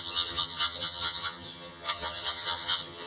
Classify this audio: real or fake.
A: fake